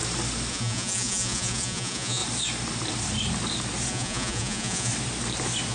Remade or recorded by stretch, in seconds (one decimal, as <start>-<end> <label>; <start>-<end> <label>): 0.0-0.5 recorded; 0.5-2.2 remade; 2.2-3.9 recorded; 3.9-4.9 remade; 4.9-5.7 recorded